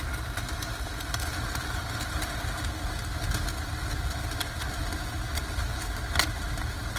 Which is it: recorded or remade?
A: recorded